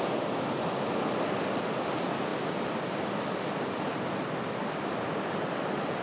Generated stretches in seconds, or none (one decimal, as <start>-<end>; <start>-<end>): none